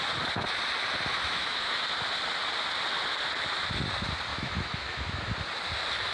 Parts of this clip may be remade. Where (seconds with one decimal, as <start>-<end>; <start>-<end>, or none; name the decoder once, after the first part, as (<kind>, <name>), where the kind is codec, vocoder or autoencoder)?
1.1-1.8 (autoencoder, DAC-VAE); 4.3-5.3